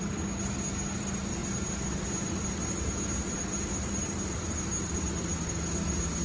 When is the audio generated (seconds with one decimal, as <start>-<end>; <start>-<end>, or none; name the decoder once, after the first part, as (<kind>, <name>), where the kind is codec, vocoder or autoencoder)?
none